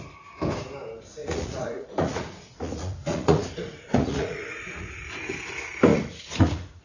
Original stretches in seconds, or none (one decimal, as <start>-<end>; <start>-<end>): 0.0-1.2; 5.3-5.9